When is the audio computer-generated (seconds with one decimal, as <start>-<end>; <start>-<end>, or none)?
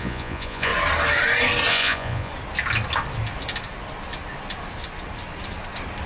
0.0-0.7; 1.7-2.3